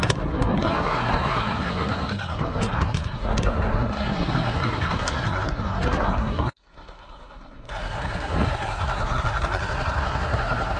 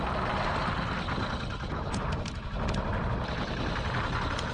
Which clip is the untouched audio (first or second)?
second